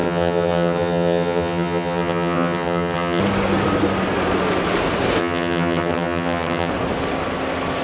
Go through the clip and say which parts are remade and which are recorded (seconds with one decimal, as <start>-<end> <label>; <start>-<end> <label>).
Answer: 0.0-3.2 remade; 3.2-5.2 recorded; 5.2-6.7 remade; 6.7-7.8 recorded